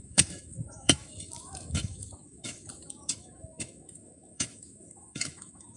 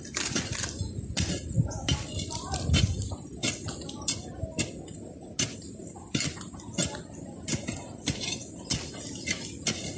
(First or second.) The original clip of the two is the second